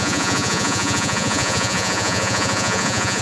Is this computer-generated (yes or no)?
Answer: yes